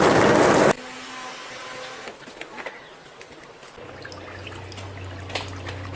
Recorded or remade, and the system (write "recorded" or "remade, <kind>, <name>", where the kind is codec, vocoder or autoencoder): recorded